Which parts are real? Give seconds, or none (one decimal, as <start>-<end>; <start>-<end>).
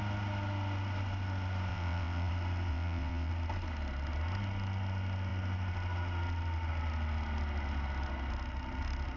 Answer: 0.0-1.7; 2.3-2.7; 3.3-9.2